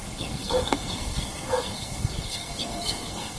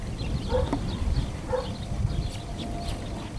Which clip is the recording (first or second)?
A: second